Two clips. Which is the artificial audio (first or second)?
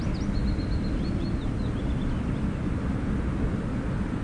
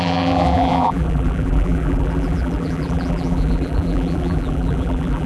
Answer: second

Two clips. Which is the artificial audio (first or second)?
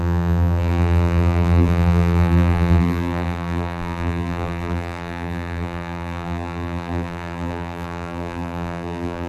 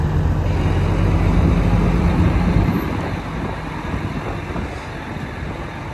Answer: first